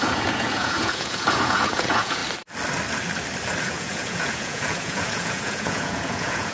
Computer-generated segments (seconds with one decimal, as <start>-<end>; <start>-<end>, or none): 0.0-2.2; 3.6-6.5